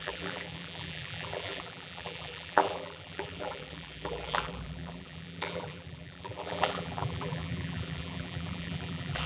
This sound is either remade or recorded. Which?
remade